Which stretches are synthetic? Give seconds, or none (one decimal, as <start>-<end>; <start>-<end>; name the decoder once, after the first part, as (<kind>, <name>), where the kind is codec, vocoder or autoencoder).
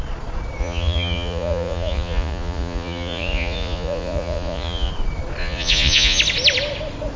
0.6-4.9 (vocoder, Vocos); 5.4-6.2